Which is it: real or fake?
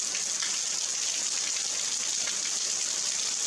real